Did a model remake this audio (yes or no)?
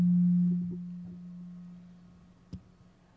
no